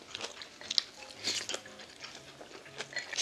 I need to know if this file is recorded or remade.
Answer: recorded